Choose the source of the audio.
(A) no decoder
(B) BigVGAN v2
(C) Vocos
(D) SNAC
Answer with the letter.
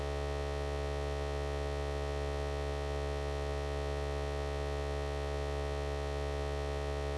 A